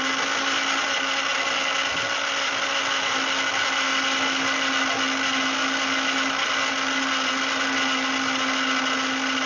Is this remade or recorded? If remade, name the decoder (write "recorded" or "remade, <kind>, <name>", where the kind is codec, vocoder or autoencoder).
recorded